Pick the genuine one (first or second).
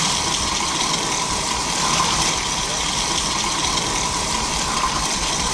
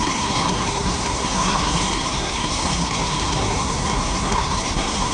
first